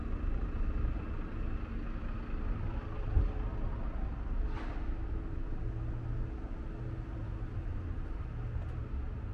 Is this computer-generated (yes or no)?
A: no